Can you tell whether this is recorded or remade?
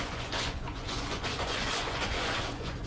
remade